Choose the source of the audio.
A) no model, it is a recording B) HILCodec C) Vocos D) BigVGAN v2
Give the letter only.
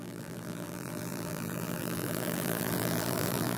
D